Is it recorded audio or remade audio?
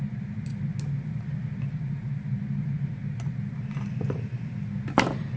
recorded